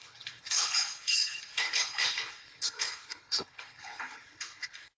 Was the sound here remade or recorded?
remade